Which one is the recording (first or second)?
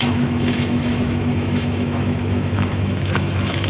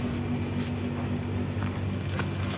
second